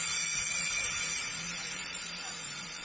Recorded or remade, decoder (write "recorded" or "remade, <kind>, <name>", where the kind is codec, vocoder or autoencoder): remade, vocoder, Vocos